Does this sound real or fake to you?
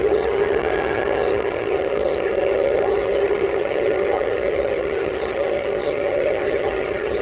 fake